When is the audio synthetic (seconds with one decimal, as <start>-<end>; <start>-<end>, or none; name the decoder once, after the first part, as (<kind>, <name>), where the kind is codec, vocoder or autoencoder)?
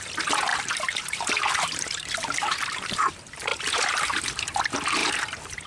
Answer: 0.5-3.1 (vocoder, BigVGAN v2); 3.5-4.2; 5.0-5.7